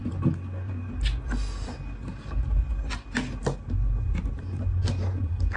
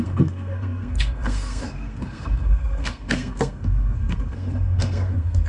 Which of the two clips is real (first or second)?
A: first